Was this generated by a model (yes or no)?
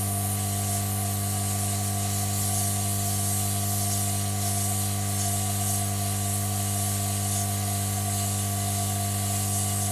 no